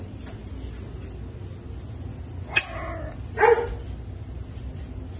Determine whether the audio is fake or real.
real